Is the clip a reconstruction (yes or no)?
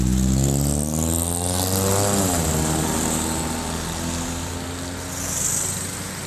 no